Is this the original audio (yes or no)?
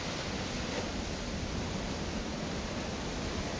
yes